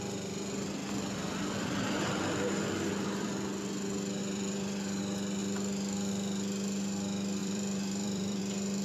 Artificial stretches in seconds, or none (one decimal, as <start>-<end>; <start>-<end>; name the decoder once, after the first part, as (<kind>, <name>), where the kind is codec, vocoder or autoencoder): 0.8-1.7 (vocoder, BigVGAN v2); 4.2-5.0; 7.4-8.4